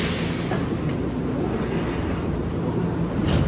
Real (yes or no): yes